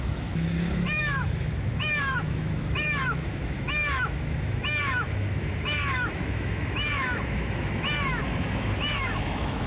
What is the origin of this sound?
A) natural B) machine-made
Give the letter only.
B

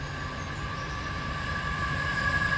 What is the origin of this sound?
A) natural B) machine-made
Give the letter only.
B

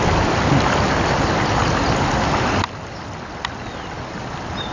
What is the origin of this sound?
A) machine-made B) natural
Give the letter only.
B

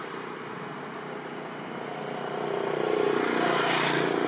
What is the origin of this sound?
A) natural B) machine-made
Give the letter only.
A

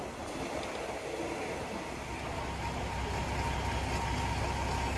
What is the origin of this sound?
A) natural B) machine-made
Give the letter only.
A